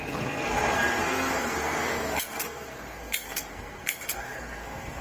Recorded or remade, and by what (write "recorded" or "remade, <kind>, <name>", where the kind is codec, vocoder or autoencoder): remade, codec, SNAC